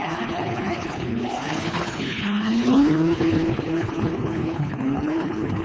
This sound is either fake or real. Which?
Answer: fake